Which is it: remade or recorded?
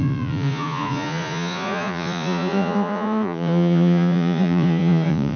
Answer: remade